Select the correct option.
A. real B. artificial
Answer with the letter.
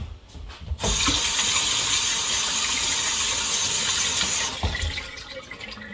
A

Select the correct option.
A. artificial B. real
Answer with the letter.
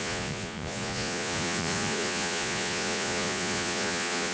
A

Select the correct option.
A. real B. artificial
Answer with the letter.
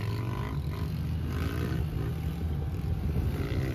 A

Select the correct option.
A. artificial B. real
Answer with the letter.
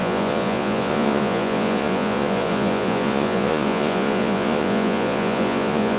A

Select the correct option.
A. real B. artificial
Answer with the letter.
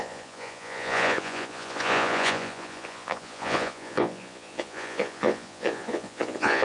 B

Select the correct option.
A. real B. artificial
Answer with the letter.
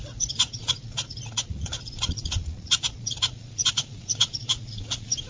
B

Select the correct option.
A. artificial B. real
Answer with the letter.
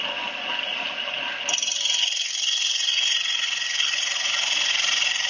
B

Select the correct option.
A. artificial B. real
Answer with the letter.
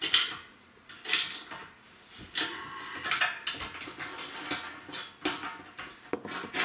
B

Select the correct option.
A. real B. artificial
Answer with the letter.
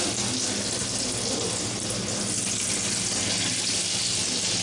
A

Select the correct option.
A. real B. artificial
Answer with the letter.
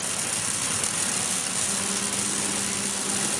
A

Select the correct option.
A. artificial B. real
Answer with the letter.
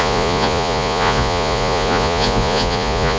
A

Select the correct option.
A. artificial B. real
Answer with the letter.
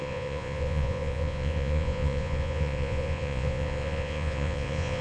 A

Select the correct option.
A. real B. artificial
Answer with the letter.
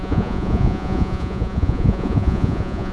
B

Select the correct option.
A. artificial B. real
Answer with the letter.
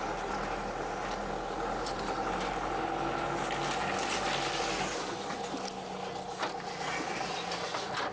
B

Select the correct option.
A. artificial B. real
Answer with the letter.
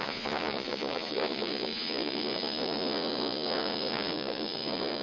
A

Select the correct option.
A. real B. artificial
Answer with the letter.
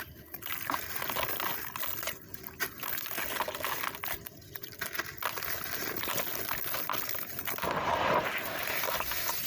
A